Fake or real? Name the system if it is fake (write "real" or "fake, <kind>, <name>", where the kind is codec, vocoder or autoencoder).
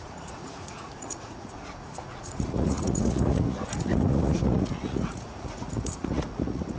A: fake, vocoder, Vocos